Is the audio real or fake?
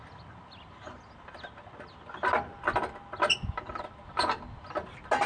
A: real